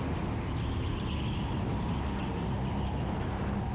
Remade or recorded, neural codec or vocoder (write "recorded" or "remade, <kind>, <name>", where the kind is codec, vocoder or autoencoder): recorded